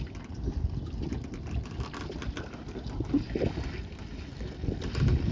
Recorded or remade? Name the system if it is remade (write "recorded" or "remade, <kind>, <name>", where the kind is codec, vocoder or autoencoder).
recorded